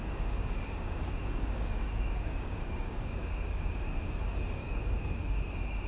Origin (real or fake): fake